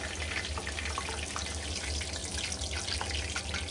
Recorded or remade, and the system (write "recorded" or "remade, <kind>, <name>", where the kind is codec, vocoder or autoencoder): recorded